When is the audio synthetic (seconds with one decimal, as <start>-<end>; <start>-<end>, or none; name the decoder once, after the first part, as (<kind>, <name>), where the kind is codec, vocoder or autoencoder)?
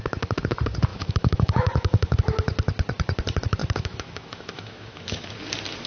0.9-2.2 (autoencoder, DAC-VAE); 3.6-5.3